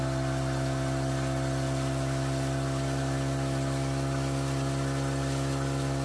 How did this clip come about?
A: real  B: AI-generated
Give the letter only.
A